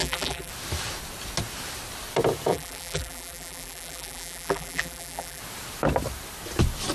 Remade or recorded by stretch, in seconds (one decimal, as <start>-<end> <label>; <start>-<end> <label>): 0.0-0.5 remade; 0.5-2.5 recorded; 2.5-5.4 remade; 5.4-6.9 recorded